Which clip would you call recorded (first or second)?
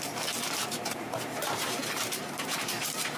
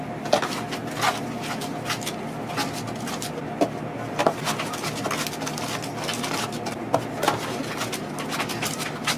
second